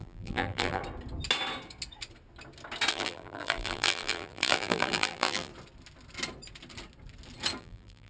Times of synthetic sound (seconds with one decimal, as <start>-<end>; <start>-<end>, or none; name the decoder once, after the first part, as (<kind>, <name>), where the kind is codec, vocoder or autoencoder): 0.0-0.8 (vocoder, BigVGAN v2); 2.9-5.5; 7.6-8.1